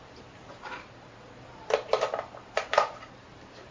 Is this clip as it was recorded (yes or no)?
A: no